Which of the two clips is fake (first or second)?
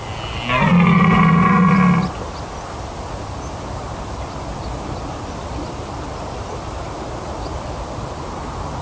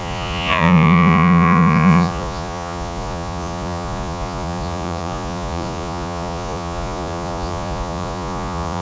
second